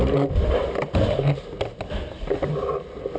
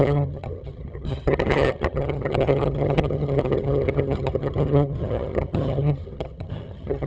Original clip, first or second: first